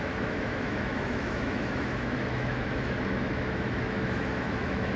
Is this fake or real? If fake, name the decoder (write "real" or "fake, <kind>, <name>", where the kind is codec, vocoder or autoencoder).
fake, autoencoder, DAC-VAE